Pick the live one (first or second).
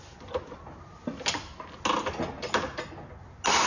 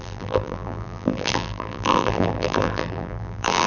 first